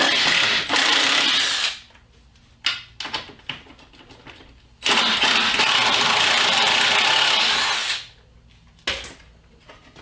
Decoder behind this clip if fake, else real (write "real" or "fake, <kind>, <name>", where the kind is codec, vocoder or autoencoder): real